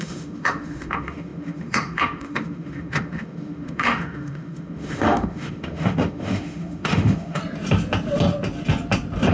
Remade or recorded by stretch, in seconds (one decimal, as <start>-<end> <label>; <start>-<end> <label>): 0.0-7.4 remade; 7.4-9.3 recorded